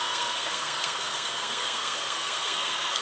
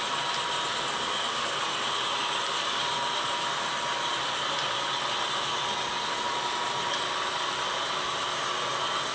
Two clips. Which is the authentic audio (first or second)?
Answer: second